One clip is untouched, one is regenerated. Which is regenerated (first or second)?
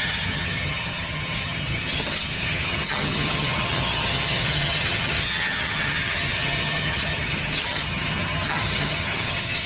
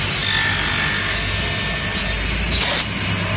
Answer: first